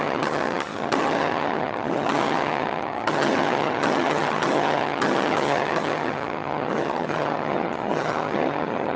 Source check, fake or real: fake